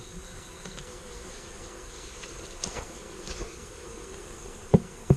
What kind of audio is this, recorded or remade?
remade